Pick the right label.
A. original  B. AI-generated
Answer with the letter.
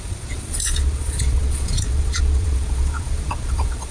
B